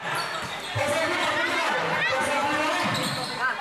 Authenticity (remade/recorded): recorded